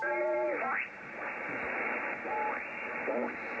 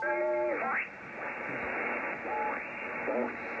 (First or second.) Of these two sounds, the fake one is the first